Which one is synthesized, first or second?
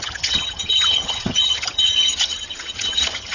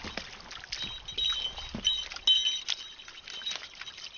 first